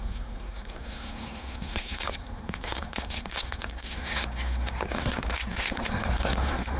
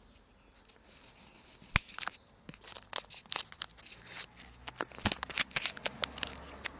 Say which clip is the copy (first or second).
first